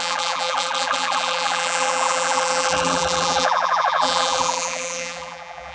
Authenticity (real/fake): fake